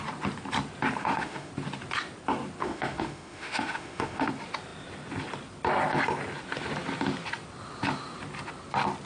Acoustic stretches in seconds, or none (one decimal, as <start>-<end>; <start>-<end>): 0.0-1.0; 1.5-2.6; 4.3-9.1